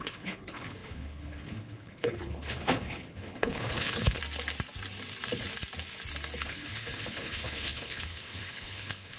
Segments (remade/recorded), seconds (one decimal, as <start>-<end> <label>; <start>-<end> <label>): 0.0-4.2 remade; 4.2-6.4 recorded; 6.4-9.2 remade